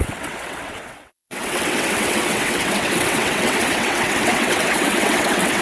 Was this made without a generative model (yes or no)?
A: no